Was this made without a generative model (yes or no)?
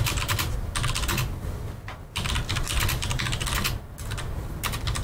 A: yes